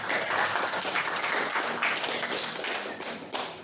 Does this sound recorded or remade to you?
recorded